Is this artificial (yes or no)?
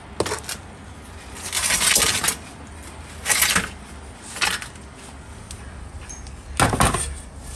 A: no